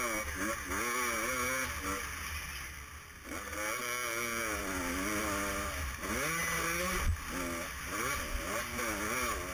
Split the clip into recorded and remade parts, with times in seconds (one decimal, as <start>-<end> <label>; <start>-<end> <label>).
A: 0.0-9.5 recorded